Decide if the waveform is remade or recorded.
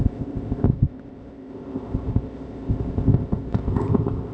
remade